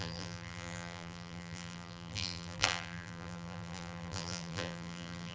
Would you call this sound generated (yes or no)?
yes